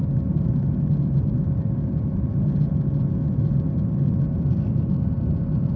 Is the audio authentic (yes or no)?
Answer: yes